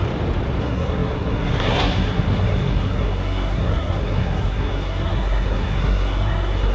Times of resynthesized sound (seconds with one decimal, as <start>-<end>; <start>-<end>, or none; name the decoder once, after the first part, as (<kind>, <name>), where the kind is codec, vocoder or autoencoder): 0.6-6.7 (codec, SNAC)